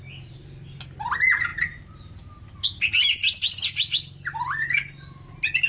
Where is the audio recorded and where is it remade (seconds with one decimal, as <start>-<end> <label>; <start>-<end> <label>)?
0.0-5.7 recorded

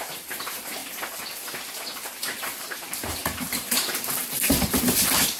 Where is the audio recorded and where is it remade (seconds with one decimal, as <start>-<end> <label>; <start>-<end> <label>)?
0.0-0.8 remade; 0.8-2.1 recorded; 2.1-5.4 remade

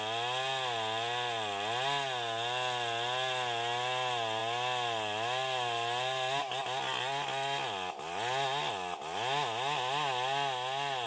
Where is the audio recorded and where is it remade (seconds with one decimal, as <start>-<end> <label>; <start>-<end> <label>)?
0.0-11.1 recorded

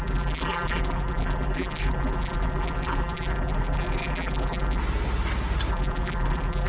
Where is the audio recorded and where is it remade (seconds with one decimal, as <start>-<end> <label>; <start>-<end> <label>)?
0.0-4.8 remade; 4.8-5.7 recorded; 5.7-6.7 remade

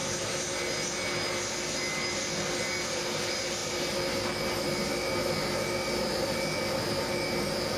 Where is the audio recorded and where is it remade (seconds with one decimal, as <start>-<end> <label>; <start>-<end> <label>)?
0.0-7.8 recorded

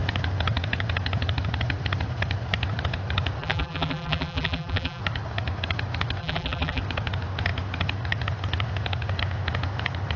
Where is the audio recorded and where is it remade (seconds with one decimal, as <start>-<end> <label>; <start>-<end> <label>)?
0.0-3.4 recorded; 3.4-5.0 remade; 5.0-6.2 recorded; 6.2-6.8 remade; 6.8-10.2 recorded

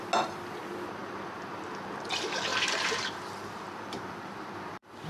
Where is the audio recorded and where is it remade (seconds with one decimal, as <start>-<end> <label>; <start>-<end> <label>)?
0.0-2.5 recorded; 2.5-5.1 remade

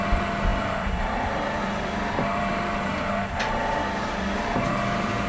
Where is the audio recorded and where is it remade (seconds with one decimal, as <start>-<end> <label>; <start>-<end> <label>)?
0.0-5.3 remade